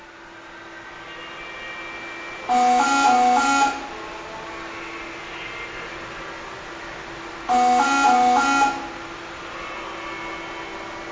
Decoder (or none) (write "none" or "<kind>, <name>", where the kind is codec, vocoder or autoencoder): none